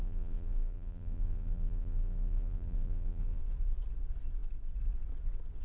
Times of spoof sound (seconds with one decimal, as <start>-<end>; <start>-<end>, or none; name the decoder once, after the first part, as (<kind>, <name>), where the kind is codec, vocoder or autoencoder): 0.0-3.4 (vocoder, BigVGAN v2)